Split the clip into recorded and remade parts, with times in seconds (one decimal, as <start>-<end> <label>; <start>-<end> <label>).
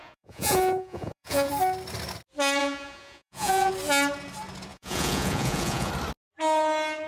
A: 0.0-1.5 remade; 1.5-2.6 recorded; 2.6-3.7 remade; 3.7-4.7 recorded; 4.7-5.9 remade; 5.9-7.1 recorded